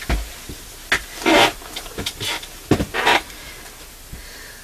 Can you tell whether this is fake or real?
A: real